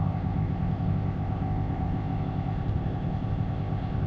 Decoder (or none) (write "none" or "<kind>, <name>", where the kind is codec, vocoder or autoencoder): codec, ZipCodec